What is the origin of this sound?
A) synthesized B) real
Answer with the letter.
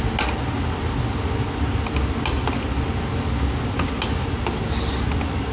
B